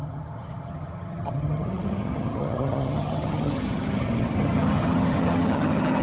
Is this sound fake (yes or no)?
yes